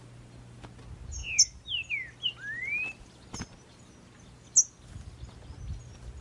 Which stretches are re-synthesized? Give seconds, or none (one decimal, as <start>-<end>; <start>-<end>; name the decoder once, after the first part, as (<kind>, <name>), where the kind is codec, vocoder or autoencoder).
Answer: none